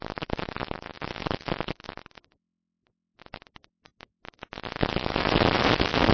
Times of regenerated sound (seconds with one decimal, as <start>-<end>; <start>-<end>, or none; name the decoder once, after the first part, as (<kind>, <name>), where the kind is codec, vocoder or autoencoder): none

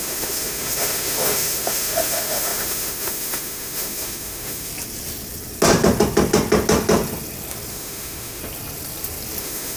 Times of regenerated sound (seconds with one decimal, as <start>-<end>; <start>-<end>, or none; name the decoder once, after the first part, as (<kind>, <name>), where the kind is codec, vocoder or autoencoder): 0.0-4.7 (autoencoder, DAC-VAE); 7.7-8.4; 9.4-9.8

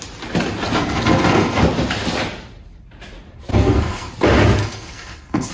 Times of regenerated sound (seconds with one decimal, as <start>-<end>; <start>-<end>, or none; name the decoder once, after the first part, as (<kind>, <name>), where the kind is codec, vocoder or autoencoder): 0.8-1.6 (codec, SNAC); 3.5-4.1; 4.6-5.5